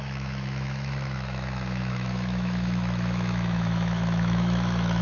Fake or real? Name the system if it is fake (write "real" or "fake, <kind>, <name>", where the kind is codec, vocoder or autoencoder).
fake, autoencoder, DAC-VAE